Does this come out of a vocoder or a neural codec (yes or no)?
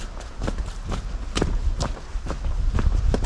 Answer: yes